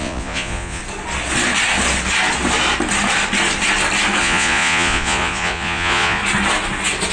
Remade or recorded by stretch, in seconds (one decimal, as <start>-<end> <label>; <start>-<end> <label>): 0.0-0.8 remade; 0.8-4.2 recorded; 4.2-6.2 remade; 6.2-7.1 recorded